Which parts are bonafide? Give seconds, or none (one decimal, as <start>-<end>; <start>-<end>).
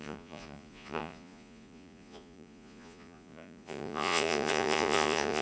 none